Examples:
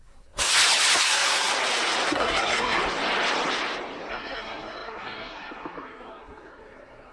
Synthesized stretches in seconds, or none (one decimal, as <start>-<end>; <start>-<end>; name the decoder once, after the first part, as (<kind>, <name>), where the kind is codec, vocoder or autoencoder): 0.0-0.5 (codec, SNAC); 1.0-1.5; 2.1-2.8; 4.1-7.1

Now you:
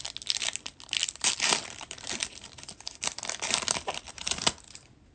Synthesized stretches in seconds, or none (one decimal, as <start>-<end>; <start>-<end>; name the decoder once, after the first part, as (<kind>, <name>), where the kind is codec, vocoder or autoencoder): none

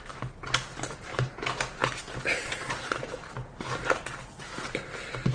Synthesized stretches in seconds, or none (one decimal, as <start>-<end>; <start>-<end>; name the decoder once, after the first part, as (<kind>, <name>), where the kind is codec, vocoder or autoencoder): none